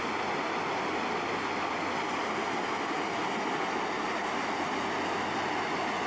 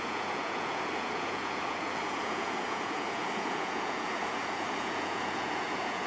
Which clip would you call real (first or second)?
first